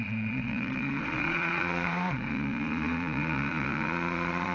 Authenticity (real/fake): fake